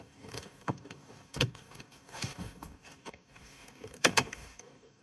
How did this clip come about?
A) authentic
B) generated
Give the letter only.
B